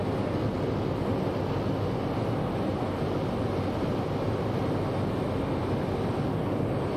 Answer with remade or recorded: recorded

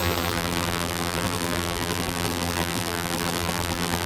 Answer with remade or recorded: remade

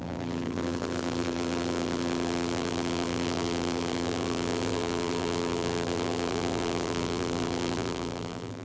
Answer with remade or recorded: remade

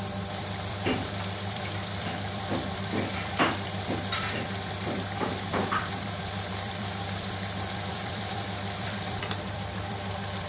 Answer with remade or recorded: remade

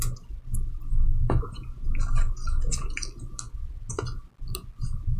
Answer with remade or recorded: recorded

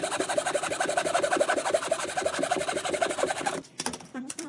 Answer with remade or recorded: remade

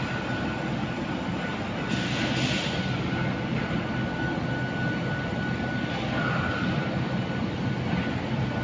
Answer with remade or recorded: recorded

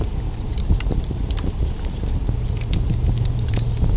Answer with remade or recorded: remade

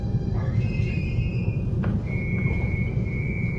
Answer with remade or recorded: remade